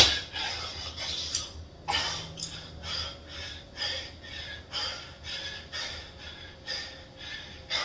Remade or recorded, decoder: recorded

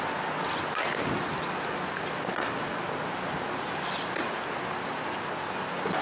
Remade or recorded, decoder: recorded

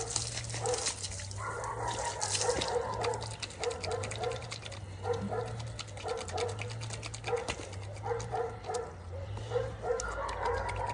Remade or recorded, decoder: recorded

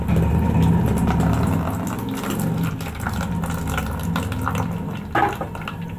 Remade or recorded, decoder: recorded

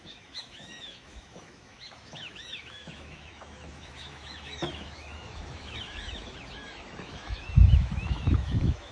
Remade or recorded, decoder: remade, autoencoder, DAC-VAE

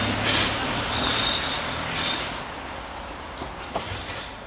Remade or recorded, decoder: recorded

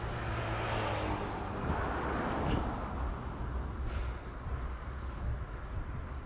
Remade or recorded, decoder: recorded